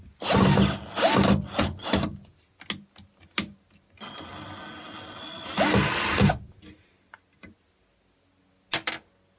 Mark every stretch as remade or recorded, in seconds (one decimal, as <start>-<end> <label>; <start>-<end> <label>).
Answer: 0.0-9.4 recorded